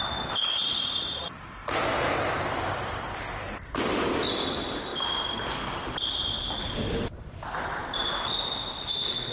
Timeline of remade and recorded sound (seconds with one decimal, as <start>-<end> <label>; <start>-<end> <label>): 0.0-1.6 remade; 1.6-2.4 recorded; 2.4-4.9 remade; 4.9-5.4 recorded; 5.4-9.3 remade